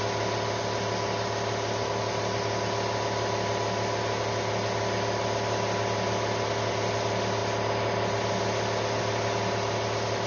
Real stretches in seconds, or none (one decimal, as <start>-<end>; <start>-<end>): 0.0-10.3